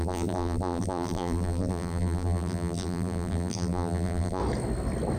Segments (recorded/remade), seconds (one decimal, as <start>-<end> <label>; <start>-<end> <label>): 0.0-4.4 remade; 4.4-5.2 recorded